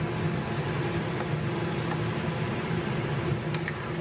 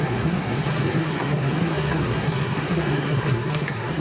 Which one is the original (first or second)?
first